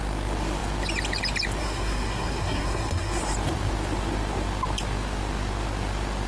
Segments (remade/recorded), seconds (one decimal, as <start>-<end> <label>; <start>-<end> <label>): 0.0-1.6 recorded; 1.6-3.2 remade; 3.2-6.3 recorded